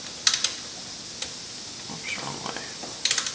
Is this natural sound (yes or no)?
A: yes